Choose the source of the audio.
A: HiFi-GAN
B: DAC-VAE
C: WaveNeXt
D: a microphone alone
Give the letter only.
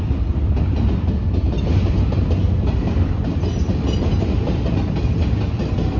D